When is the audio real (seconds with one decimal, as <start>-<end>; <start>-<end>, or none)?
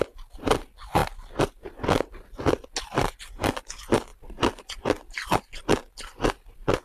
0.0-6.8